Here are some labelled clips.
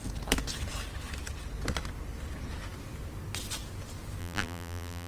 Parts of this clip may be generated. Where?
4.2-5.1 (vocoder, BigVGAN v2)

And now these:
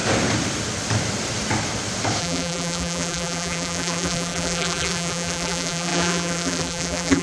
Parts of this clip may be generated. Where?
2.2-7.2 (vocoder, BigVGAN v2)

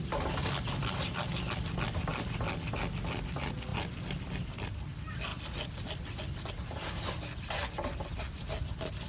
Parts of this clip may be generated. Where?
none

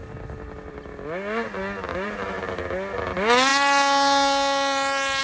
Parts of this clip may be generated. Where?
1.9-2.6 (vocoder, BigVGAN v2)

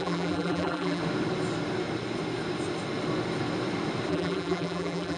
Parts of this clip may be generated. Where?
0.0-1.0 (vocoder, BigVGAN v2); 4.1-5.2

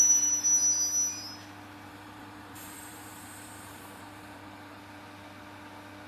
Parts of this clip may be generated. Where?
1.9-4.8 (vocoder, BigVGAN v2)

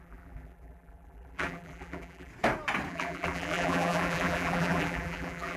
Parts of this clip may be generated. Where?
0.0-2.3 (vocoder, BigVGAN v2); 2.9-5.6

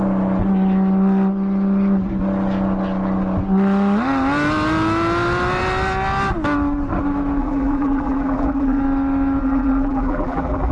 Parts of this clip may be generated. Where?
7.4-8.8 (vocoder, BigVGAN v2); 9.4-10.7